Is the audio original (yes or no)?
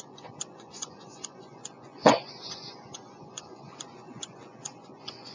no